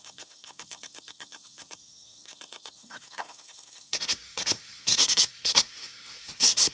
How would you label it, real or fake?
fake